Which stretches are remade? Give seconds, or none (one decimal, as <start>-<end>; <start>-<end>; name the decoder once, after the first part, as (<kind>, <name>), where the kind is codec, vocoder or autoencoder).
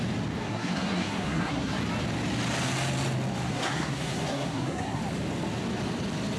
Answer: 0.4-1.8 (codec, SNAC); 3.5-5.0